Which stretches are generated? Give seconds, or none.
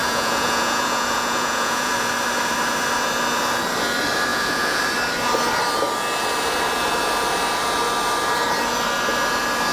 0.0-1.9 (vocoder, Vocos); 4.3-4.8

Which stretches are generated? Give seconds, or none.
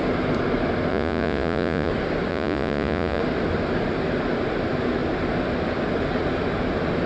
0.9-1.9 (vocoder, Vocos); 2.3-3.2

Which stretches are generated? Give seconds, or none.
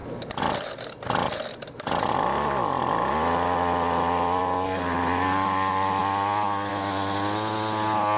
none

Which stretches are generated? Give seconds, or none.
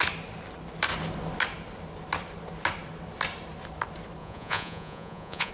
4.2-5.5 (vocoder, Vocos)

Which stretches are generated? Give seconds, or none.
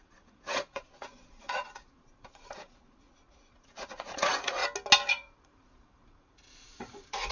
0.0-4.6 (vocoder, Vocos); 5.1-7.3